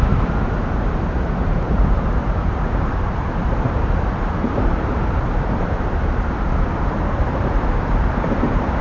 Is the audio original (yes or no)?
no